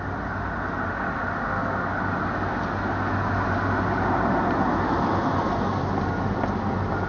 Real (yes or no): yes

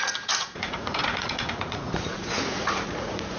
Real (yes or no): no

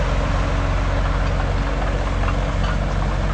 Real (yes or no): yes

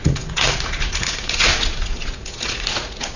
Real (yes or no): no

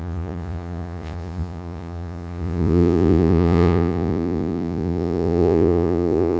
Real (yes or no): no